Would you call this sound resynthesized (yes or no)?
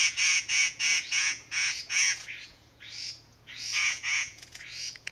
yes